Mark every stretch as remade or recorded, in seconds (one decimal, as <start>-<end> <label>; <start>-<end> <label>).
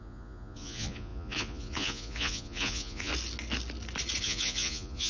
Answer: 0.0-3.1 remade; 3.1-4.2 recorded; 4.2-5.1 remade